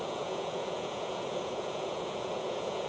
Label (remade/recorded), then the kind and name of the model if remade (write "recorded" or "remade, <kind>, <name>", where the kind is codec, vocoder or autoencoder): remade, vocoder, Vocos